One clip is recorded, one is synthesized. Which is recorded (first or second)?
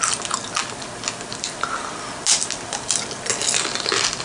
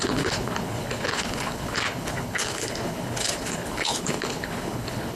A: first